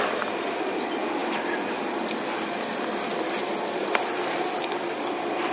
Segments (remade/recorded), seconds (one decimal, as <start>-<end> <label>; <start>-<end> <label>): 0.0-5.5 recorded